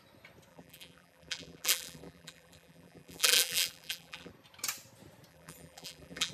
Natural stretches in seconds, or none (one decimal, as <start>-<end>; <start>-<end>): 0.0-0.5; 4.3-5.3